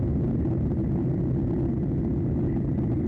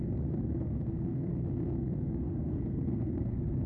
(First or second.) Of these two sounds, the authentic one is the first